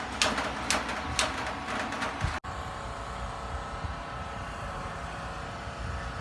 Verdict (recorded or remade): recorded